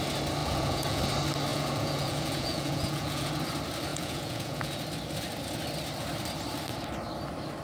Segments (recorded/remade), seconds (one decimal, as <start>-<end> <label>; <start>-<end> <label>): 0.0-0.4 recorded; 0.4-1.0 remade; 1.0-1.5 recorded; 1.5-3.3 remade; 3.3-3.9 recorded; 3.9-4.8 remade; 4.8-7.6 recorded